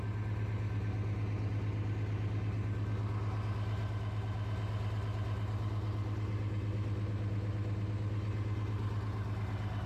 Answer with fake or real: real